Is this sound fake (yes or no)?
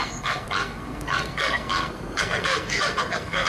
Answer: yes